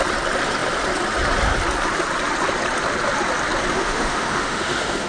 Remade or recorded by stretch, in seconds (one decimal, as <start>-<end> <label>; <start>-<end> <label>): 0.0-3.7 recorded; 3.7-5.1 remade